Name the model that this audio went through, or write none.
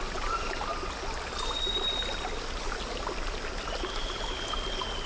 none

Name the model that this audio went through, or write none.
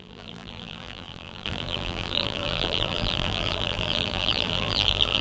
vocoder, BigVGAN v2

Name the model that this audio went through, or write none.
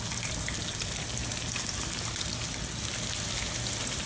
none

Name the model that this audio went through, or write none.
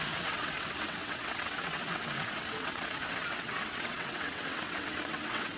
vocoder, WaveNeXt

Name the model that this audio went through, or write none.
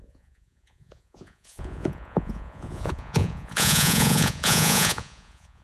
vocoder, Vocos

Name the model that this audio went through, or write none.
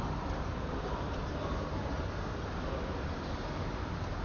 none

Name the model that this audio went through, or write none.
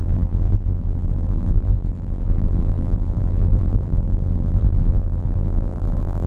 vocoder, BigVGAN v2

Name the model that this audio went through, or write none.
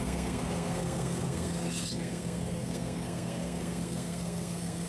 codec, SNAC